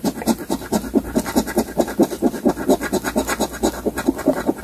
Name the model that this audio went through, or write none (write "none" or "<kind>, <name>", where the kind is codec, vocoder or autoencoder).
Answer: none